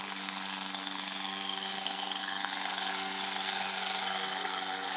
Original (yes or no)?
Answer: no